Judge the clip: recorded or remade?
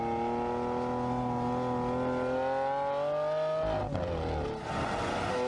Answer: recorded